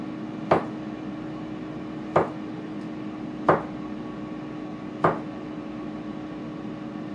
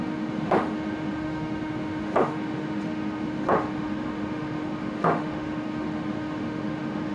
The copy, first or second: second